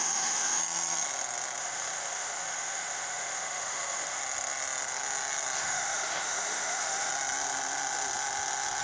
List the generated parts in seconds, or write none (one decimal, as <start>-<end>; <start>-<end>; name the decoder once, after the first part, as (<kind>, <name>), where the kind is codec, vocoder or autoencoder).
0.0-0.6 (autoencoder, DAC-VAE); 1.6-4.2; 5.6-7.1